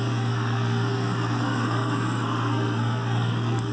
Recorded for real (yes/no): no